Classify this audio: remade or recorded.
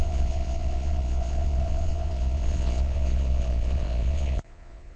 remade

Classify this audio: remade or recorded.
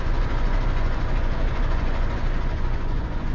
remade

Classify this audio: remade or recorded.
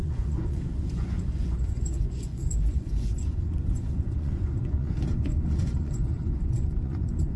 remade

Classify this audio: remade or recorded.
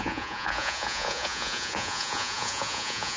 remade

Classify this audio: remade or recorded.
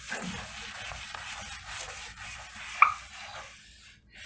recorded